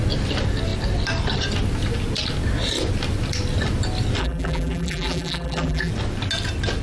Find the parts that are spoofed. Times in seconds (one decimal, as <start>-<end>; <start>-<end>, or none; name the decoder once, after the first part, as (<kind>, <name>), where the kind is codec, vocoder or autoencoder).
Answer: 4.2-5.9 (vocoder, BigVGAN v2)